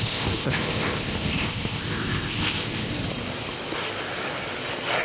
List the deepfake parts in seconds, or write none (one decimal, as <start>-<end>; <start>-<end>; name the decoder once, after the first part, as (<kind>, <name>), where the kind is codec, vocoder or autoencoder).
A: 0.0-2.9 (codec, ZipCodec)